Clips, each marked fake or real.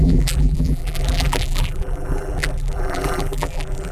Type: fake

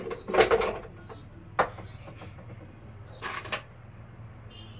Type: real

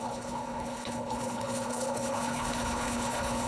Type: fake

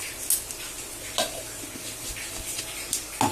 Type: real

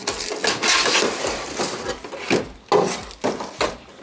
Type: real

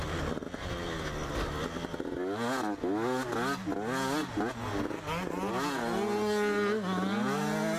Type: real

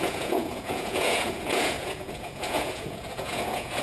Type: fake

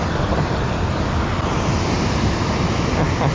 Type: real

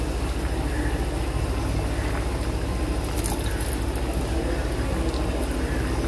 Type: real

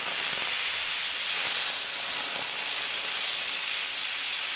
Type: real